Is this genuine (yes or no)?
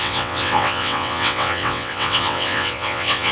no